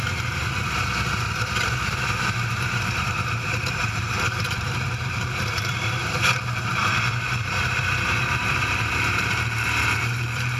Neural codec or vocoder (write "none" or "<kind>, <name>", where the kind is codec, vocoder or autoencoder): vocoder, BigVGAN v2